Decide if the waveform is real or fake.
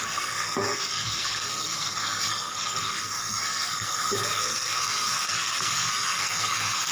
fake